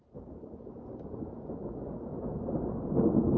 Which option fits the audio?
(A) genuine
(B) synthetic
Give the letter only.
A